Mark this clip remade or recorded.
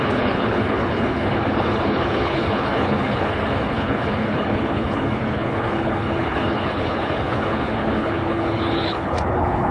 remade